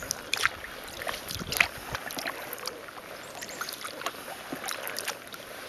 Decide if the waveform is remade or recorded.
recorded